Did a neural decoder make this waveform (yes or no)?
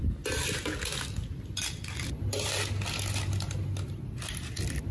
no